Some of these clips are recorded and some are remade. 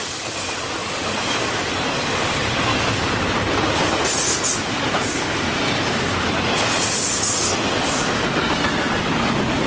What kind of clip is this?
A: recorded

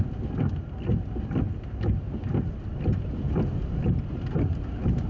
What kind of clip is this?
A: recorded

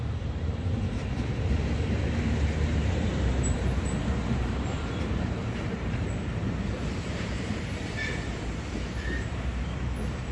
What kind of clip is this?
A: remade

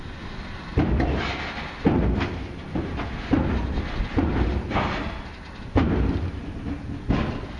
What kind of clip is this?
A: recorded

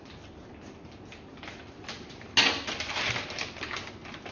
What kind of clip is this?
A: recorded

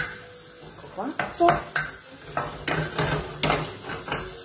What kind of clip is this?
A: recorded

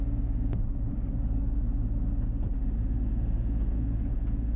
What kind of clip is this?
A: recorded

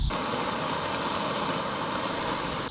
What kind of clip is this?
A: recorded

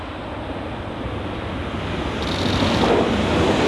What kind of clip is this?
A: recorded